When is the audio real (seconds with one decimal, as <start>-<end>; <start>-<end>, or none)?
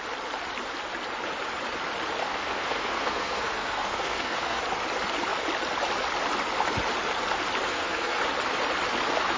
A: 0.0-2.2; 4.6-7.7; 8.2-9.4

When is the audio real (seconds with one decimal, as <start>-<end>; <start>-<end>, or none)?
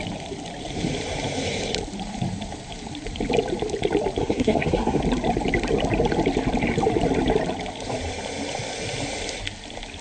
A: 0.0-4.2; 5.0-10.0